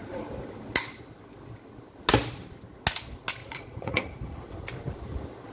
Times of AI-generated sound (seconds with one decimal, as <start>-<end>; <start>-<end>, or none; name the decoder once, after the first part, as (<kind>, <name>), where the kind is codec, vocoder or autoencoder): 3.4-4.5 (vocoder, Vocos)